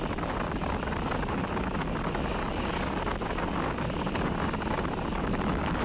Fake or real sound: real